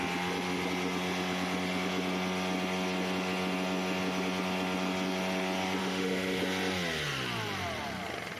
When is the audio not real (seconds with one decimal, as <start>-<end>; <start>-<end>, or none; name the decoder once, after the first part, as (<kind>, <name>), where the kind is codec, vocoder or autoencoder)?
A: 5.8-6.4 (autoencoder, DAC-VAE)